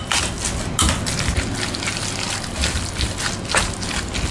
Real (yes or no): yes